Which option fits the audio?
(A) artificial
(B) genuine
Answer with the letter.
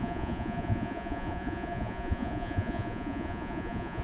A